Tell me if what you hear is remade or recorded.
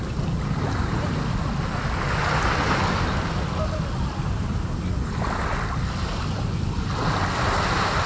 recorded